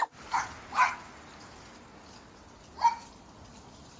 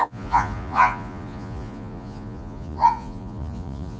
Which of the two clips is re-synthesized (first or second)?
second